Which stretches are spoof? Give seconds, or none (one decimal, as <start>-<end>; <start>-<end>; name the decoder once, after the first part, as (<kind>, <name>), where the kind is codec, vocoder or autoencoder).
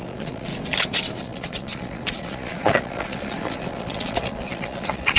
0.0-0.5 (vocoder, Vocos); 1.2-5.2